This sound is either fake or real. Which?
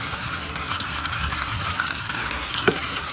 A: fake